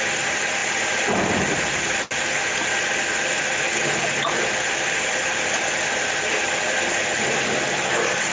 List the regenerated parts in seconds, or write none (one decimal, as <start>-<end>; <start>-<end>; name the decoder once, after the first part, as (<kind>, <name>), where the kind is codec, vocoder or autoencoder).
none